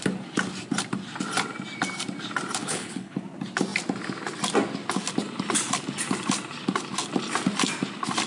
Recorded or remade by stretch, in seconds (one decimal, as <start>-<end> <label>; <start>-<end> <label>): 0.0-2.6 recorded; 2.6-3.2 remade; 3.2-8.3 recorded